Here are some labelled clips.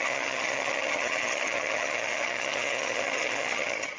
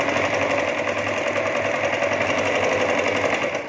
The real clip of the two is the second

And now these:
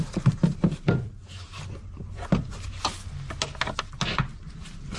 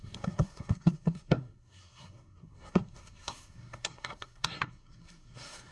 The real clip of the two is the first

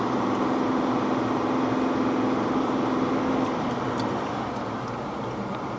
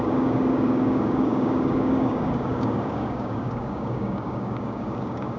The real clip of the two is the first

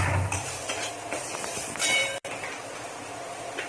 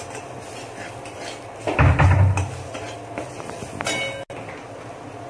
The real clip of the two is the second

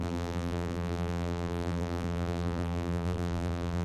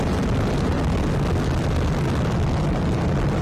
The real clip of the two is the second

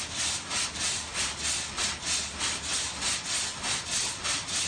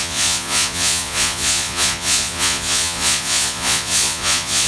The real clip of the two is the first